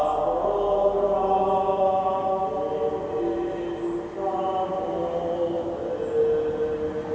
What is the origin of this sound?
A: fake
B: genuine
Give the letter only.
B